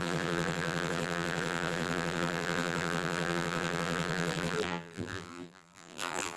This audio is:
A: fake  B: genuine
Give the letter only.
A